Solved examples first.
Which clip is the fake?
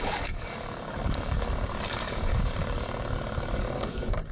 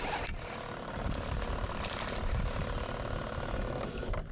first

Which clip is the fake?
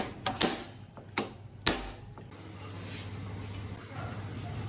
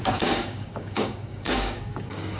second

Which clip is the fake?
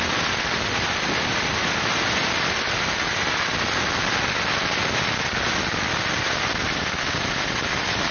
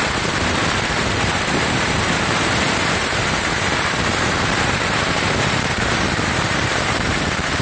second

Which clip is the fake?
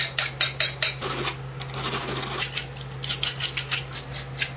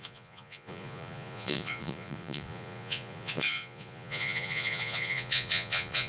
second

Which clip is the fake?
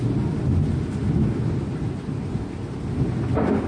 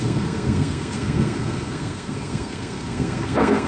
second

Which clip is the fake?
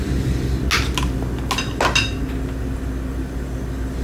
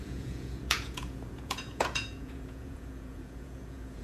second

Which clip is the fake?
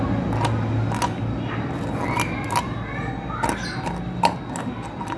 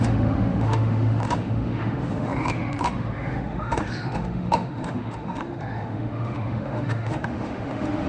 second